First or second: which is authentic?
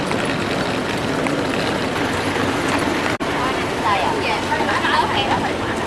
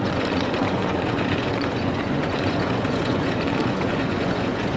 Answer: first